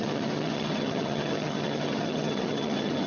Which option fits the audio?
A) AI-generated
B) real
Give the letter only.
A